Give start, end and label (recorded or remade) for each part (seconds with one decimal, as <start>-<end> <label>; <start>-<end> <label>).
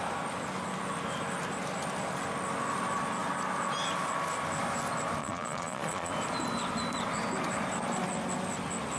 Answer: 0.0-5.2 recorded; 5.2-6.1 remade; 6.1-9.0 recorded